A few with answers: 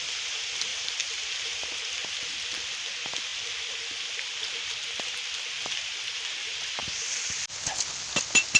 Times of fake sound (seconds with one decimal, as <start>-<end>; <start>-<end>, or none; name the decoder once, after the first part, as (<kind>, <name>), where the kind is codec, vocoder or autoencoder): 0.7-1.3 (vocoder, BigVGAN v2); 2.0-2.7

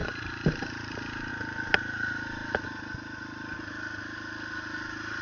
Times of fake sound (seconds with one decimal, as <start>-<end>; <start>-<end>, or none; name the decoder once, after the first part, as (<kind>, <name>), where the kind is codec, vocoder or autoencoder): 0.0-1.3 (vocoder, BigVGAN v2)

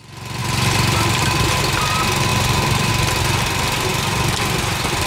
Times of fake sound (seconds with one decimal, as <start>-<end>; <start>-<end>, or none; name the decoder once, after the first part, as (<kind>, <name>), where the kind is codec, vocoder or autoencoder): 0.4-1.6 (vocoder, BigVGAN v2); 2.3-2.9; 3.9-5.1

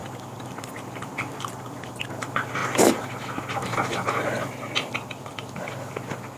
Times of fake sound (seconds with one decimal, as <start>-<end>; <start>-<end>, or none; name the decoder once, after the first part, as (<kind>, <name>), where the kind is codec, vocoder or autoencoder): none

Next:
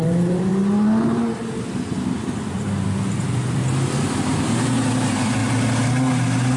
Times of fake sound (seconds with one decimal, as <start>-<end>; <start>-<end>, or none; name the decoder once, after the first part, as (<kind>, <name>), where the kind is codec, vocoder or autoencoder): 0.0-0.5 (vocoder, BigVGAN v2); 1.6-3.6; 4.3-5.4